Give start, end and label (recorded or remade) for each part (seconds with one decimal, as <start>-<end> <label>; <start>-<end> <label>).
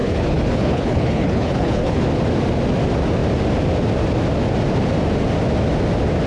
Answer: 0.0-2.0 remade; 2.0-6.3 recorded